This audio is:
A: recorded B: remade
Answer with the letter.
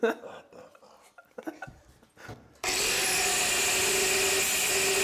A